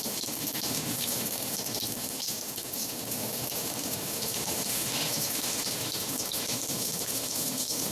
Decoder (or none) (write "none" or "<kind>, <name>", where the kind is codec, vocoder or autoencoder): autoencoder, DAC-VAE